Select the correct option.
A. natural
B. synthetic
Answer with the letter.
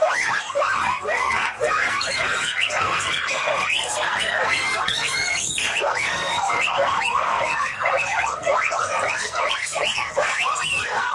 B